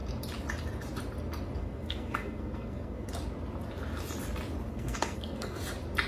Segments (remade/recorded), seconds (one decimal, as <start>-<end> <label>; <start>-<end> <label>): 0.0-1.6 recorded; 1.6-3.1 remade; 3.1-4.7 recorded; 4.7-5.6 remade; 5.6-6.1 recorded

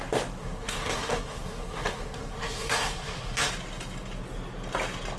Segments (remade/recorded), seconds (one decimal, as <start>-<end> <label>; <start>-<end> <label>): 0.0-0.4 recorded; 0.4-3.5 remade; 3.5-5.2 recorded

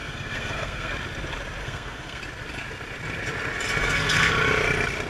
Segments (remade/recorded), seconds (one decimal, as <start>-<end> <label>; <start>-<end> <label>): 0.0-0.9 remade; 0.9-1.6 recorded; 1.6-2.2 remade; 2.2-3.8 recorded; 3.8-4.3 remade; 4.3-5.1 recorded

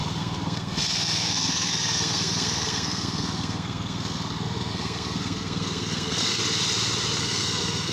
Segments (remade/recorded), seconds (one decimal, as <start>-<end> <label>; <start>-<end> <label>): 0.0-6.4 remade; 6.4-7.2 recorded; 7.2-7.9 remade

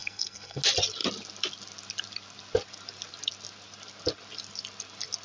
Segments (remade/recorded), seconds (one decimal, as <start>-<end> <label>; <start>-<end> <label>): 0.0-0.6 remade; 0.6-5.2 recorded

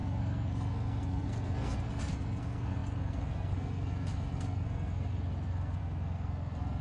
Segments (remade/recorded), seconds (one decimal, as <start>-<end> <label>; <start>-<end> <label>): 0.0-6.8 remade

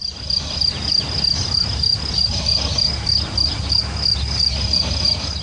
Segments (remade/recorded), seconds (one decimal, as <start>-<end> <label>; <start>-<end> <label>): 0.0-5.4 recorded